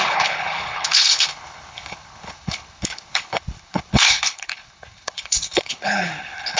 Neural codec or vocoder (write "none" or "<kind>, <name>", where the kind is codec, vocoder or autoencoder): codec, HILCodec